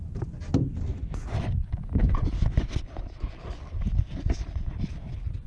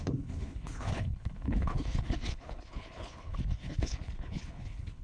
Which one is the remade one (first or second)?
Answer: second